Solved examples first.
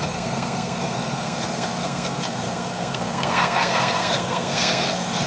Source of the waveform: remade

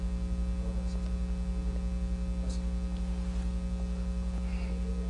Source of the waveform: recorded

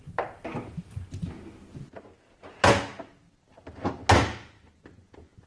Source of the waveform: recorded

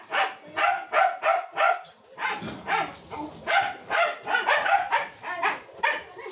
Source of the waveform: recorded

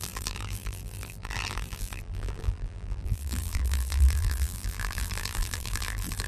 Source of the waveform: remade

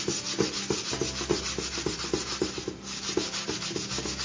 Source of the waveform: recorded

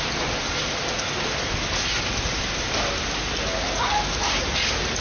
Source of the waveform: recorded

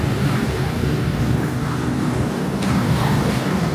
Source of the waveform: remade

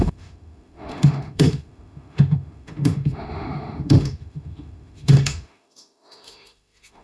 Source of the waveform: remade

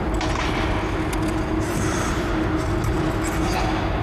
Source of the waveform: recorded